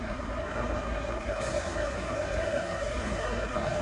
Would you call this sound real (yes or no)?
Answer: no